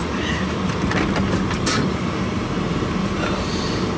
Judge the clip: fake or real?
real